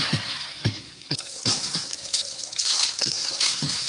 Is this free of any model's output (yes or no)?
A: no